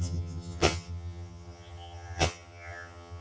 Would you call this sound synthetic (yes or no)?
yes